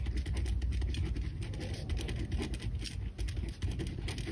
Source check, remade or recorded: recorded